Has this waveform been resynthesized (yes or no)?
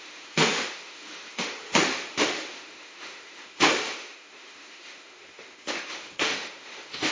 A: yes